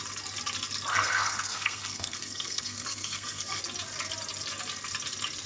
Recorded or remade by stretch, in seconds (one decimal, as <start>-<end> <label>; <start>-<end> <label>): 0.0-0.9 recorded; 0.9-3.6 remade; 3.6-5.5 recorded